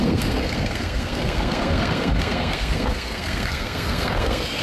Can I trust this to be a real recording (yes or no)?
no